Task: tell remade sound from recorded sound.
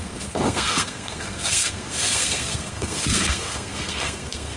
remade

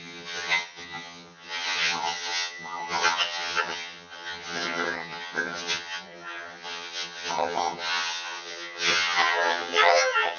remade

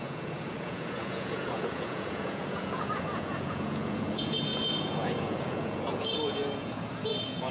remade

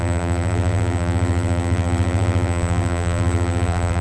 remade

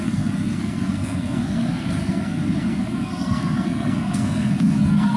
remade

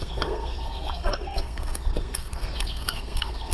remade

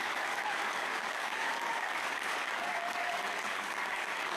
remade